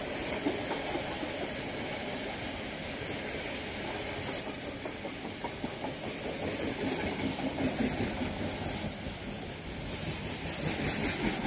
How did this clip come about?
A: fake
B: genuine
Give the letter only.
B